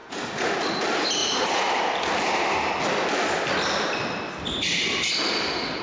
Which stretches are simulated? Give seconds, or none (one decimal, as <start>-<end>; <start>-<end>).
0.0-0.5; 1.2-1.7